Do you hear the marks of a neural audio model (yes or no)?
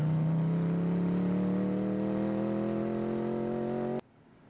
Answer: no